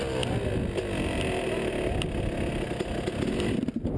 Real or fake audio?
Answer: real